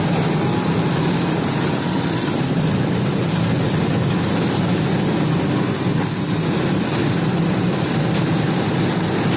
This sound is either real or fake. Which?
real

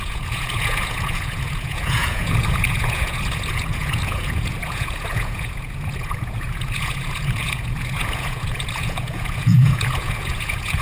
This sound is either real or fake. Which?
fake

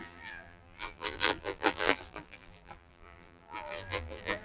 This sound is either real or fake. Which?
fake